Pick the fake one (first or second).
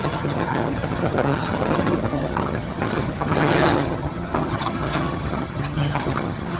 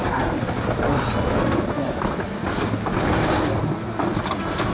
first